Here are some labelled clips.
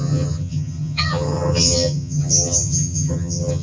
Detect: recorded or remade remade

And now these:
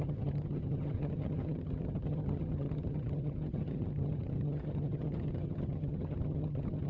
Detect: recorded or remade remade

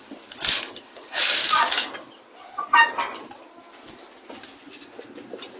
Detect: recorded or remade recorded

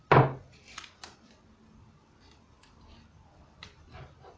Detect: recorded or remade recorded